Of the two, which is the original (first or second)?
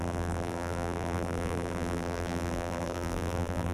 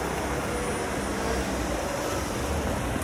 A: second